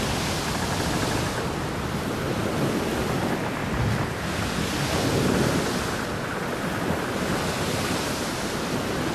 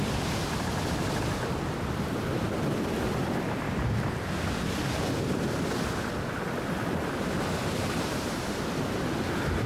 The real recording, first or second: first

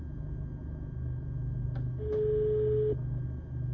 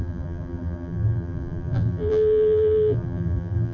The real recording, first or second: first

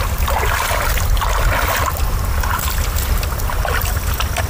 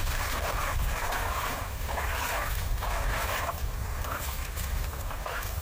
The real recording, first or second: first